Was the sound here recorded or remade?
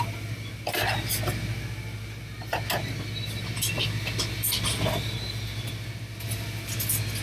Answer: recorded